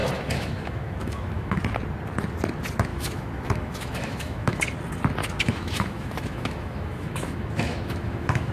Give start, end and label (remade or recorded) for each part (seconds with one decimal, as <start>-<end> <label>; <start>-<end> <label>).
0.0-1.6 remade; 1.6-2.9 recorded; 2.9-4.6 remade; 4.6-5.2 recorded; 5.2-8.5 remade